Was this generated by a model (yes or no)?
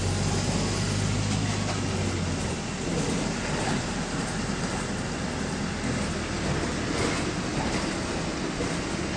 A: no